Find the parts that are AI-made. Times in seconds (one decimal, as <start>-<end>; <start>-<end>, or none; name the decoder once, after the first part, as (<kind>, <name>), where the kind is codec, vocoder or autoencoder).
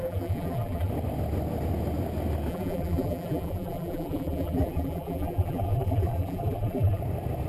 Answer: 0.0-0.9 (vocoder, BigVGAN v2); 2.5-7.0